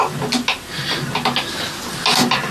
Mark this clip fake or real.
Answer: real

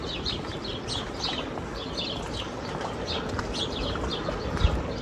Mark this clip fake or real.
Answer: real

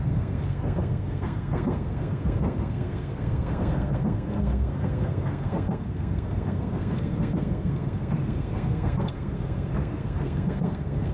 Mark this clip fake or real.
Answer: fake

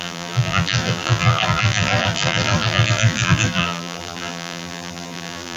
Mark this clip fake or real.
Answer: fake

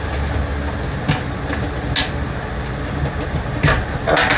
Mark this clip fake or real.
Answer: real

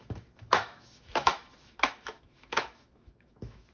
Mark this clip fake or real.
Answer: fake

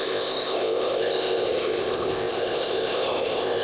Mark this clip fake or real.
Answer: fake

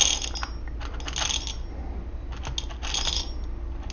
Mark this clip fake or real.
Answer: real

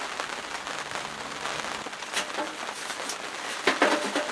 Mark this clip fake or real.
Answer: real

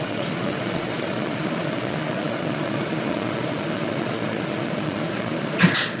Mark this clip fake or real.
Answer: fake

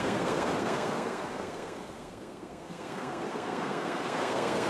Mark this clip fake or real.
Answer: fake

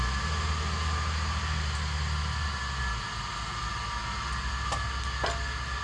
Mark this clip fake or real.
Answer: real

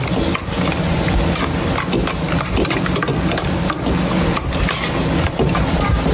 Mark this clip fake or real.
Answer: real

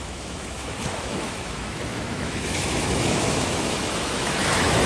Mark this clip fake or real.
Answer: fake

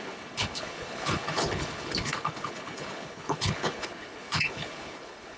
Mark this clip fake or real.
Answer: fake